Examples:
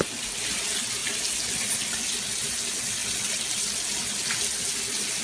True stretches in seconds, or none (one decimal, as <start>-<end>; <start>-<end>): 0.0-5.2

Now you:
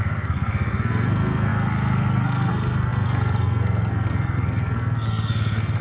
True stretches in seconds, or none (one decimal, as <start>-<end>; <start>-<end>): none

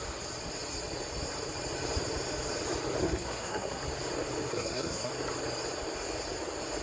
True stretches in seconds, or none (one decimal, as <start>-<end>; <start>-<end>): 0.0-3.0; 3.8-4.5; 5.1-6.8